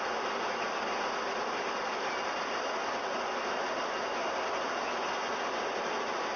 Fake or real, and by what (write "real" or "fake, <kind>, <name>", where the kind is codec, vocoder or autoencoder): real